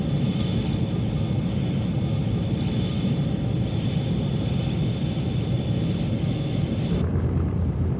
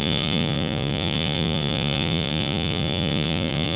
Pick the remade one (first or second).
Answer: second